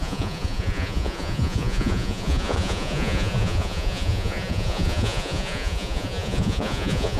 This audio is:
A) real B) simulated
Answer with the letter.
B